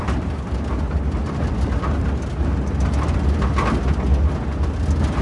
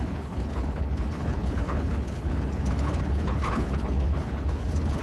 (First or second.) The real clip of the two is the first